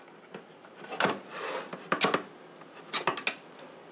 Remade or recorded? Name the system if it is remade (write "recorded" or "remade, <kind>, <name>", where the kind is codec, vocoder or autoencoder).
recorded